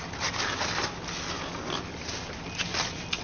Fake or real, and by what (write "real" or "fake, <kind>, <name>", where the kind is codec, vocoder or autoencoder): real